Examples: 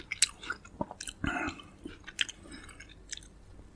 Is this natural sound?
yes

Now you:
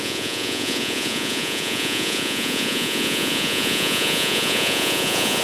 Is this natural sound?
no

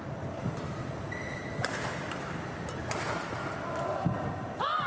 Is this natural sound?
yes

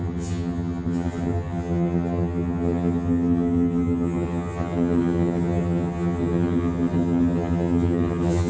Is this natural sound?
no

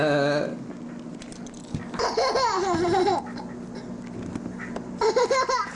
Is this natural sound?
yes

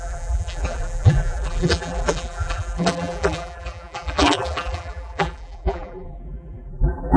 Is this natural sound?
no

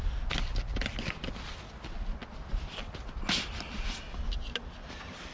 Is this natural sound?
yes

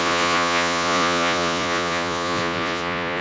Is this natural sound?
no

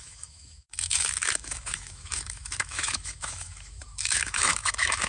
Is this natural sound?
no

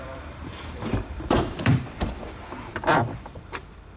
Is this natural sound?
no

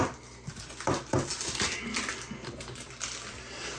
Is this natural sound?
yes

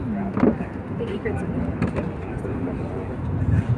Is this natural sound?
yes